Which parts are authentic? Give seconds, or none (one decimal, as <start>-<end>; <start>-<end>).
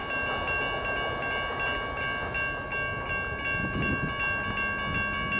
0.0-5.4